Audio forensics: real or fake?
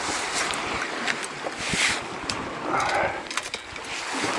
real